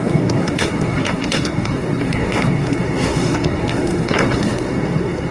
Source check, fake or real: fake